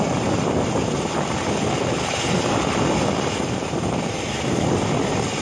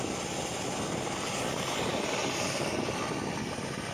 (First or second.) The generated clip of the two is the first